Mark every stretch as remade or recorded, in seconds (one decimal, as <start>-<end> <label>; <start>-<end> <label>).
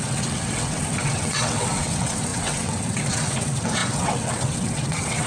0.0-5.3 remade